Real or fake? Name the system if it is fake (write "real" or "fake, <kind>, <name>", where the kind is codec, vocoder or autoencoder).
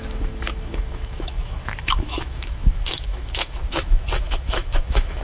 fake, autoencoder, DAC-VAE